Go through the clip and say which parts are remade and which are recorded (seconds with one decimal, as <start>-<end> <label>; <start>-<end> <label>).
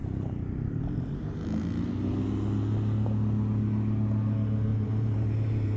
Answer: 0.0-1.4 remade; 1.4-4.7 recorded; 4.7-5.8 remade